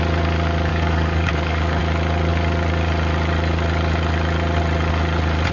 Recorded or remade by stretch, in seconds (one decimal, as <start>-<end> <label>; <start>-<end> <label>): 0.0-0.7 recorded; 0.7-1.8 remade; 1.8-5.5 recorded